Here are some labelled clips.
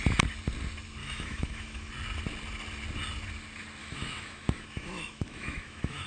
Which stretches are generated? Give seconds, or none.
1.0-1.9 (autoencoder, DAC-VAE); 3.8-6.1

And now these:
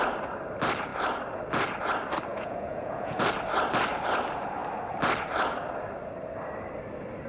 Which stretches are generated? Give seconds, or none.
2.3-3.2 (vocoder, Vocos)

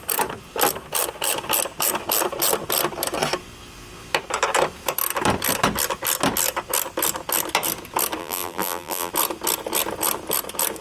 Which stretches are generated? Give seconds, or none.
8.2-9.1 (vocoder, BigVGAN v2)

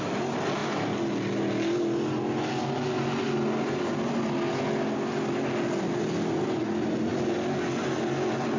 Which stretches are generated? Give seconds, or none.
none

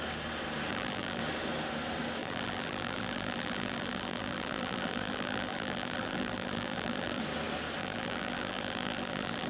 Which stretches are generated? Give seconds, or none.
0.7-1.2 (vocoder, BigVGAN v2); 2.2-7.2; 7.8-9.5